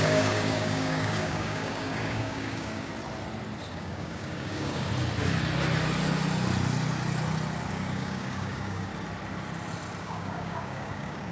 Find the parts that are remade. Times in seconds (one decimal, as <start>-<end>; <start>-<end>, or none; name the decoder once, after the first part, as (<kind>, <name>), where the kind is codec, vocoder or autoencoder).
0.0-2.9 (codec, DAC); 3.7-4.9; 7.7-8.9; 10.0-11.3